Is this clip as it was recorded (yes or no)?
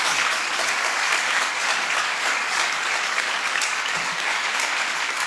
no